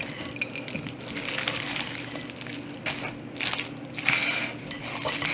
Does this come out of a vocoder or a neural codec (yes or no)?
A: no